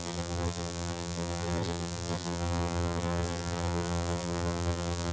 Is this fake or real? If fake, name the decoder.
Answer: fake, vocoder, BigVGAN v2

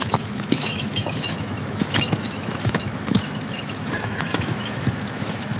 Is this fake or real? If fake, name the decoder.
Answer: fake, autoencoder, DAC-VAE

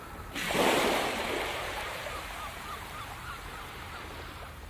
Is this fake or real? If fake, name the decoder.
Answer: fake, vocoder, BigVGAN v2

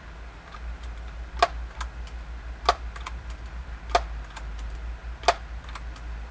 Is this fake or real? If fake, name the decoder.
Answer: real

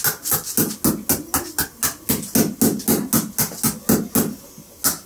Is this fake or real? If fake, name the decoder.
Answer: real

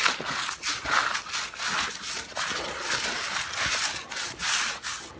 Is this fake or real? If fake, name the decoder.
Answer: real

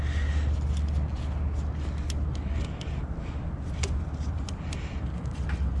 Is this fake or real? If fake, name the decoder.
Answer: real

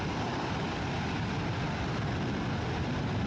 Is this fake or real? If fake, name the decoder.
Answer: real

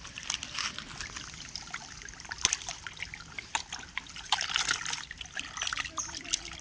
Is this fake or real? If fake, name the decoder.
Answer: real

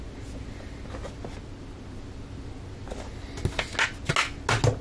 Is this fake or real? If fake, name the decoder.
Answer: real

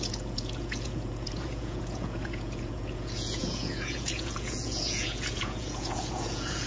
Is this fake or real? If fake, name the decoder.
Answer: fake, vocoder, Vocos